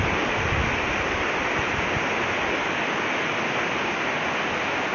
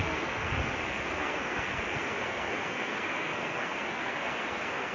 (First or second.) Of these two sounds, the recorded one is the first